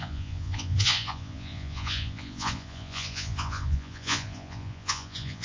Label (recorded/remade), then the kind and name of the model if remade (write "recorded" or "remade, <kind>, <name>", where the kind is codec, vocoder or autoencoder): remade, vocoder, Vocos